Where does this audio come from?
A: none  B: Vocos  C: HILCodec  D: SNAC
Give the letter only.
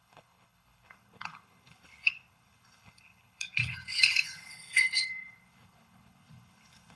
C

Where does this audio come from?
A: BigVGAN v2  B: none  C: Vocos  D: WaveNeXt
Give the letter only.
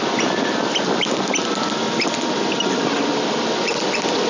B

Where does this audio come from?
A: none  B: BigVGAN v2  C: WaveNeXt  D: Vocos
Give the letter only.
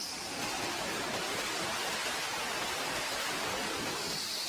B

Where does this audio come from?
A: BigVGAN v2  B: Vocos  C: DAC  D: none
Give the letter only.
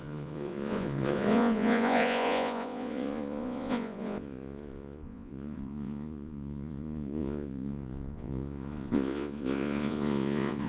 B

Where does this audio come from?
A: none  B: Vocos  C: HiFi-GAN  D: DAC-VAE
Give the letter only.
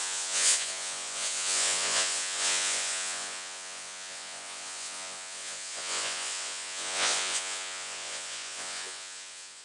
B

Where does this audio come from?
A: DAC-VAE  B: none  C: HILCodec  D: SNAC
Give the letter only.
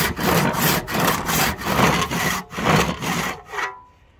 B